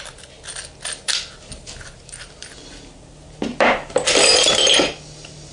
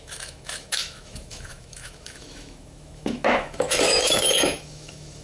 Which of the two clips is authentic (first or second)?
first